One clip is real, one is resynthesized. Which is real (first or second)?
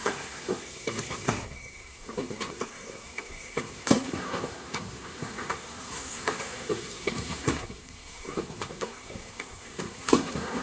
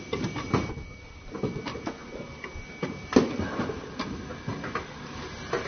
second